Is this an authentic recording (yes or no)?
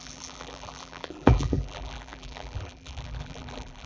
no